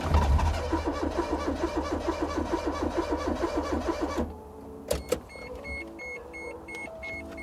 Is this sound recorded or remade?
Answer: recorded